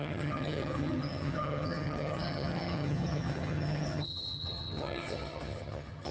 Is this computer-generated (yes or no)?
yes